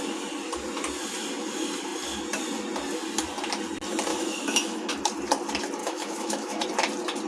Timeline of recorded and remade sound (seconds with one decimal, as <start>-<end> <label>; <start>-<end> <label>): 0.0-4.1 recorded; 4.1-4.9 remade; 4.9-5.8 recorded; 5.8-6.6 remade; 6.6-7.3 recorded